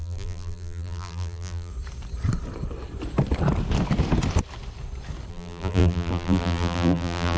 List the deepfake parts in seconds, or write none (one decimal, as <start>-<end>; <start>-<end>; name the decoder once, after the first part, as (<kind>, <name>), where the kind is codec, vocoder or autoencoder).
0.0-1.7 (vocoder, BigVGAN v2); 5.3-7.4